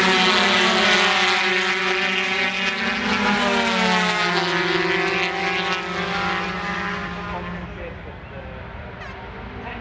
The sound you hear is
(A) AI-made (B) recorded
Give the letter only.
B